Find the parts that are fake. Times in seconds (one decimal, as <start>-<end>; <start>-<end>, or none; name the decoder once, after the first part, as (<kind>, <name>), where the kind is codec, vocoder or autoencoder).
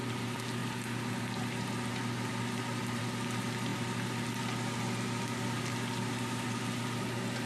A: none